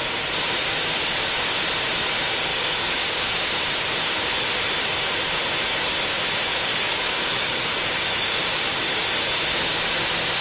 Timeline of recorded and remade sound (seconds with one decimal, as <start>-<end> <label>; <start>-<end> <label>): 0.0-2.5 recorded; 2.5-3.5 remade; 3.5-6.5 recorded; 6.5-8.8 remade; 8.8-10.4 recorded